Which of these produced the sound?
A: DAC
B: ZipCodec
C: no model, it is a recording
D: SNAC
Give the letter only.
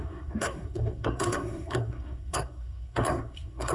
D